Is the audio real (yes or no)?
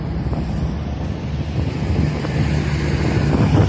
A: yes